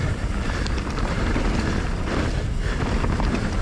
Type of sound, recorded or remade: remade